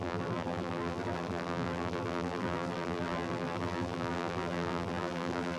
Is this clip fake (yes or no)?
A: yes